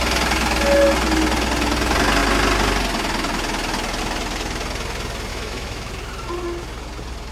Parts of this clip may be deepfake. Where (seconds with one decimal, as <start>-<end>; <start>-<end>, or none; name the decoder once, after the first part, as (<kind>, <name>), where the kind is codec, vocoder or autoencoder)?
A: 5.3-5.9 (autoencoder, DAC-VAE)

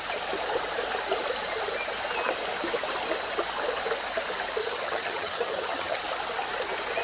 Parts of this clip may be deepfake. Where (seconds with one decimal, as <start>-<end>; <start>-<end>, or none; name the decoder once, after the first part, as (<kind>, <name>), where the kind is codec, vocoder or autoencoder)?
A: 4.6-6.0 (vocoder, HiFi-GAN)

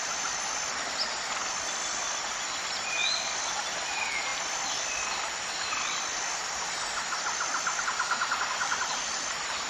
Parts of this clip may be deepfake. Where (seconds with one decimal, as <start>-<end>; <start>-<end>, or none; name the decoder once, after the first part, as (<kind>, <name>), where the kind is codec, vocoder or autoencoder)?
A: 0.0-1.4 (vocoder, BigVGAN v2); 2.2-4.3; 7.8-9.7

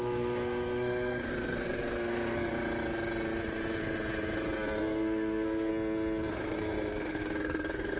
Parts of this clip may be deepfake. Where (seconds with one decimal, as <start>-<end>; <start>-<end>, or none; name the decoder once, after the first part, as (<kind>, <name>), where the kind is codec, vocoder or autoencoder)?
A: 0.0-2.5 (codec, SNAC); 4.8-5.7; 6.3-8.0

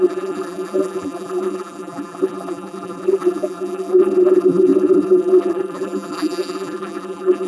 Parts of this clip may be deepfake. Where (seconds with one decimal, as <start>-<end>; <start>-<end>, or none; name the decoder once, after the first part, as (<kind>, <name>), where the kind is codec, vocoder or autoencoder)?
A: 0.0-7.5 (vocoder, BigVGAN v2)

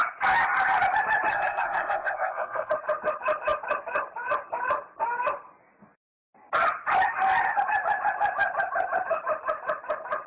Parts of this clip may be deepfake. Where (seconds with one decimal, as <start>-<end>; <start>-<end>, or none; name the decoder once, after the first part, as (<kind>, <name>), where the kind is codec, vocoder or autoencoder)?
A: 1.3-2.7 (codec, SNAC)

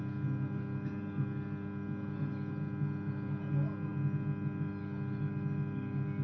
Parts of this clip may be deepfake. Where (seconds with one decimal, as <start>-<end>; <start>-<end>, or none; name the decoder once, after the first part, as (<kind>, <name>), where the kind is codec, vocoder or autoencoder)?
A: none

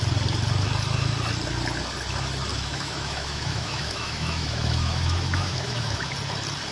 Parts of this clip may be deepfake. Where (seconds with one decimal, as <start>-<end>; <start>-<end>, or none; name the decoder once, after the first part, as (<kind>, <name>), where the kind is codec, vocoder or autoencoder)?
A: 2.5-6.1 (autoencoder, DAC-VAE)